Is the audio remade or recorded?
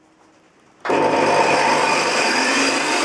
recorded